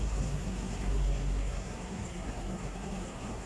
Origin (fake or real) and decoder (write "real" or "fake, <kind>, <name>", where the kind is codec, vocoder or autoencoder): fake, codec, SNAC